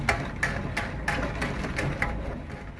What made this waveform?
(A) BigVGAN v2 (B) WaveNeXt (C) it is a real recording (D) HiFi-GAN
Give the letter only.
C